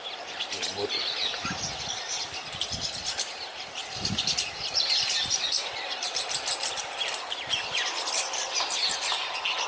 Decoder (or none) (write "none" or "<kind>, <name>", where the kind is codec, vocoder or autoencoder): none